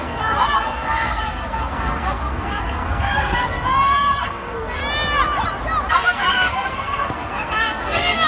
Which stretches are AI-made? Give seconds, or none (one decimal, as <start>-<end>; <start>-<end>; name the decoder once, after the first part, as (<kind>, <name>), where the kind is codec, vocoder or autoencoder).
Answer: 0.0-4.8 (codec, SNAC); 5.9-8.3